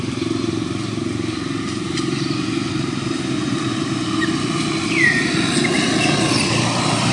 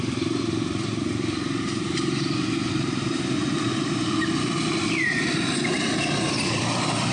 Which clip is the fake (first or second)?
second